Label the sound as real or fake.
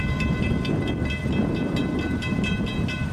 real